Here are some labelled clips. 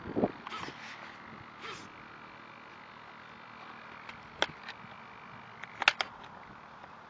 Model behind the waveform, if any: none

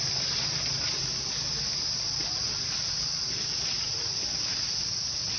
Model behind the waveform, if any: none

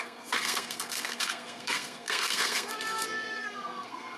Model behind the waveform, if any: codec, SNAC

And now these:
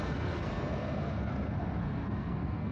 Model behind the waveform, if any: codec, SNAC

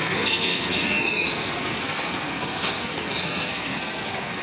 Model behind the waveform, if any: codec, SNAC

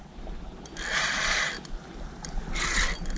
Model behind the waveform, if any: none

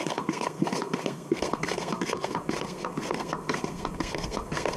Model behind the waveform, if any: codec, SNAC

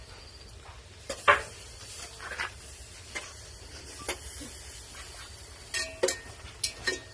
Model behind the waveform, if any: none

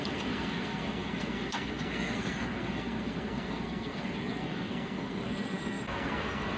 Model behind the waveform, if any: codec, SNAC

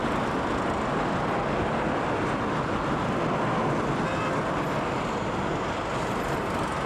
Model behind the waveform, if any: none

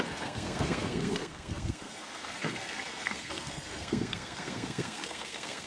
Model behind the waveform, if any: codec, SNAC